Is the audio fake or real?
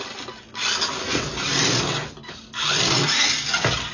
real